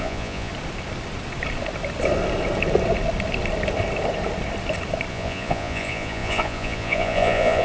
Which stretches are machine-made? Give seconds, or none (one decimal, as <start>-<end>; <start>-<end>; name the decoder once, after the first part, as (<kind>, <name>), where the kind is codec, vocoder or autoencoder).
0.0-0.5 (vocoder, Vocos); 5.1-7.6